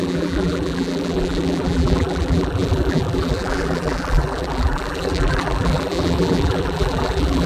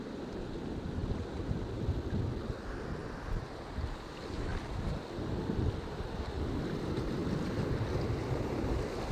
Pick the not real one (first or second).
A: first